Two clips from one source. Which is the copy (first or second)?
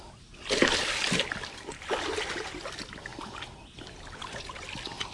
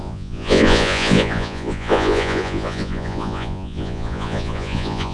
second